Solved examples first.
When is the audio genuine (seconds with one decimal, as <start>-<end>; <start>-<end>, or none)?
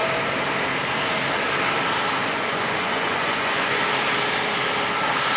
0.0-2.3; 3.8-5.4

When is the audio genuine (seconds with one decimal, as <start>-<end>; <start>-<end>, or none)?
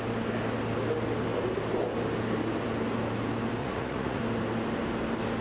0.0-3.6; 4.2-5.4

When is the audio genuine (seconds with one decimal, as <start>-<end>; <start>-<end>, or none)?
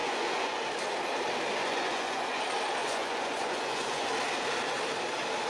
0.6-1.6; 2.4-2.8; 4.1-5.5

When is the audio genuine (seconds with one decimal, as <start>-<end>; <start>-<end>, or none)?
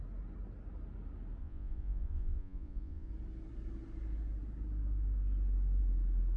0.0-1.4; 3.1-6.4